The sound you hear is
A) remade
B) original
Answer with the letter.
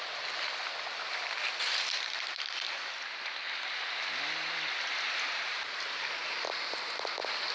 B